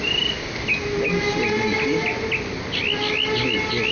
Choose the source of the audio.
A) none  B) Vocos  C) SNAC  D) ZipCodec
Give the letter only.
A